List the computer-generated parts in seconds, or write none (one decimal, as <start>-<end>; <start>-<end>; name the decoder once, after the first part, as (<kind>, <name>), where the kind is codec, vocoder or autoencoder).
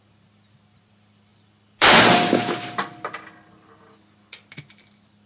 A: none